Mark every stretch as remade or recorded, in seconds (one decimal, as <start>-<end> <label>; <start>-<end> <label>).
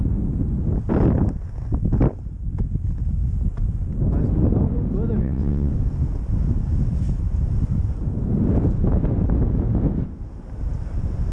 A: 0.0-5.2 recorded; 5.2-5.7 remade; 5.7-11.3 recorded